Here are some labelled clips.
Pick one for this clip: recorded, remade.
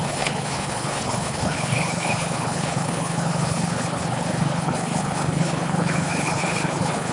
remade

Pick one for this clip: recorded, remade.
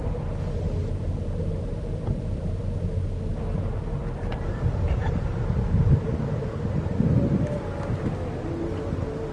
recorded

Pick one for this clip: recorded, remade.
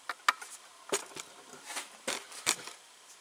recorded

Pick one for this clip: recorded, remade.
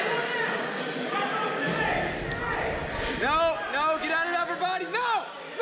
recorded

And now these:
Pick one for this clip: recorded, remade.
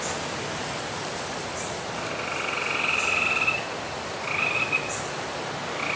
recorded